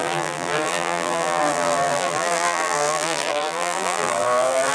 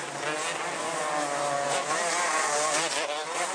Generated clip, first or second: first